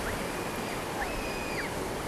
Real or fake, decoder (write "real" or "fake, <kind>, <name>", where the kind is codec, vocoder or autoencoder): fake, vocoder, BigVGAN v2